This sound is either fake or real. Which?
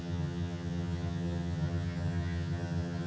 fake